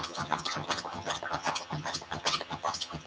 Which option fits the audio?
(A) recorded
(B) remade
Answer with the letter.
B